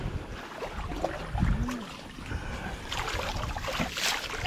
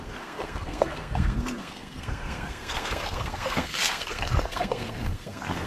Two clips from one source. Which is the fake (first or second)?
second